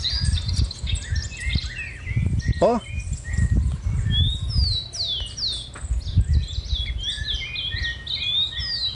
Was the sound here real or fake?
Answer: real